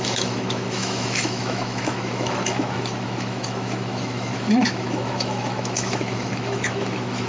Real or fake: fake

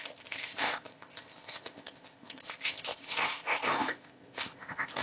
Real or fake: fake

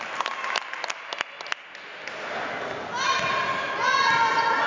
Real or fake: real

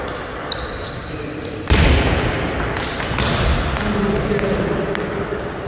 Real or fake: real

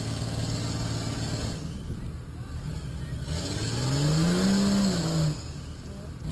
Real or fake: real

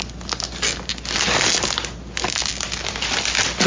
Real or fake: real